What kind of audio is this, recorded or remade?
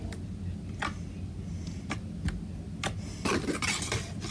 recorded